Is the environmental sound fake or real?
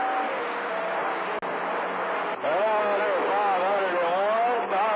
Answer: real